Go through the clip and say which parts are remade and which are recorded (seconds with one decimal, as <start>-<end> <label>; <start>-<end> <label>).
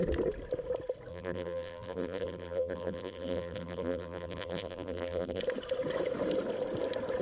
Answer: 0.0-1.1 recorded; 1.1-5.4 remade; 5.4-7.2 recorded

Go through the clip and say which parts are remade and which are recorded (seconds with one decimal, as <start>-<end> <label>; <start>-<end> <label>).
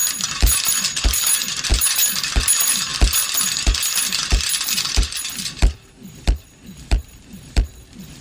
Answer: 0.0-0.6 remade; 0.6-8.2 recorded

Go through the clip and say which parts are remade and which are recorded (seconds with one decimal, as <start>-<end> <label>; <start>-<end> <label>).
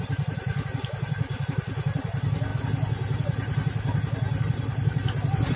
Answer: 0.0-5.6 recorded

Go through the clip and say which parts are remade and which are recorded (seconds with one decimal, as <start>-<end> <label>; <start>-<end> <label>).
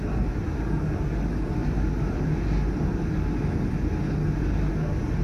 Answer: 0.0-5.2 recorded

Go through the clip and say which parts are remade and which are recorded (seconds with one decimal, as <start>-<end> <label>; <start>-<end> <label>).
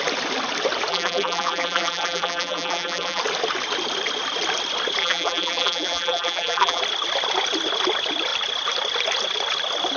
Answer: 0.0-0.9 recorded; 0.9-3.2 remade; 3.2-5.0 recorded; 5.0-6.8 remade; 6.8-10.0 recorded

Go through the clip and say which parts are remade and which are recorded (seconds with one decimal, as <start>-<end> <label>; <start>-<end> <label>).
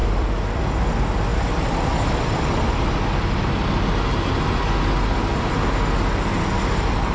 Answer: 0.0-7.1 recorded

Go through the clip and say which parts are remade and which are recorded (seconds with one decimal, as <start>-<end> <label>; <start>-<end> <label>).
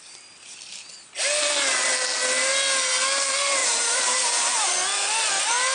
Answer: 0.0-3.6 recorded; 3.6-4.7 remade; 4.7-5.7 recorded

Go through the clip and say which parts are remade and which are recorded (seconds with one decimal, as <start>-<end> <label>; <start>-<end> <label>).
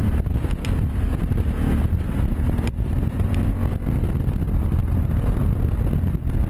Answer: 0.0-2.3 recorded; 2.3-3.3 remade; 3.3-4.8 recorded; 4.8-5.3 remade; 5.3-6.5 recorded